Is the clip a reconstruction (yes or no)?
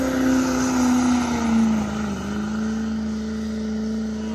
no